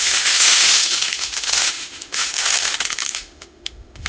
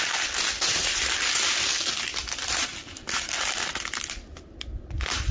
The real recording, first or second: second